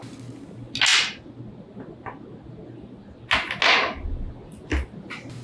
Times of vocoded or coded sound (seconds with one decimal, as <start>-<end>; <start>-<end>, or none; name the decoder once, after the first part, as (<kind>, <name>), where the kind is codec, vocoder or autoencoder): none